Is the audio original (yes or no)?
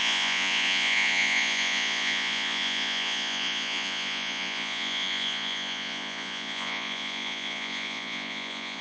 no